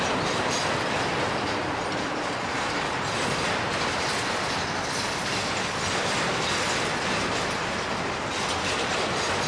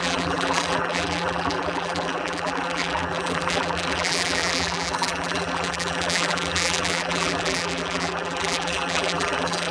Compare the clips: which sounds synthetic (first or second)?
second